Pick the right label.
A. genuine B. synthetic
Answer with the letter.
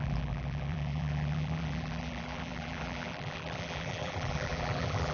B